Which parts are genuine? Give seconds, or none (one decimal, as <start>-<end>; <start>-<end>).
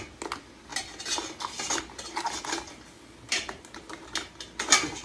0.0-5.0